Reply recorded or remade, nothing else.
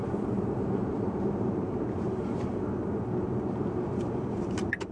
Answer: remade